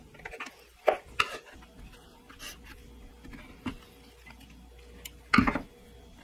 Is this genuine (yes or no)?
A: yes